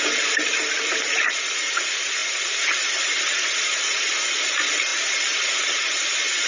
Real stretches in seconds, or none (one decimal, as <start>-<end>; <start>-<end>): 0.0-6.5